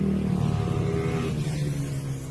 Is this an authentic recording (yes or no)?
yes